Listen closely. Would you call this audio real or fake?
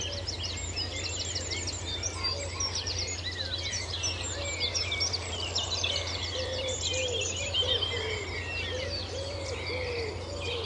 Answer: fake